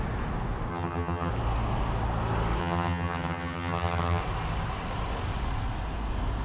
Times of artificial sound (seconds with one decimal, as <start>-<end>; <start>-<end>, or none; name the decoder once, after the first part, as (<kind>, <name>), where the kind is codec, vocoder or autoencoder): 0.7-1.3 (vocoder, HiFi-GAN); 2.6-4.2